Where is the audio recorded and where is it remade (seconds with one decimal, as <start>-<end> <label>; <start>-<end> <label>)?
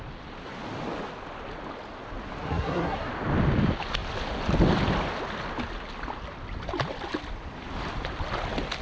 0.0-2.4 recorded; 2.4-3.1 remade; 3.1-8.8 recorded